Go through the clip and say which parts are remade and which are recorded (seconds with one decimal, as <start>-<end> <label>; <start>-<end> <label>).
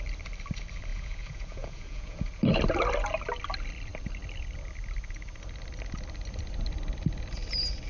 0.0-0.9 recorded; 0.9-2.4 remade; 2.4-7.9 recorded